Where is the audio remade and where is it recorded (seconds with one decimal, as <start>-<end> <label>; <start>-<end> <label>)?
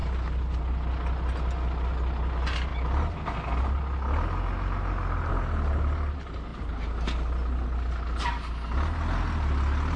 0.0-10.0 recorded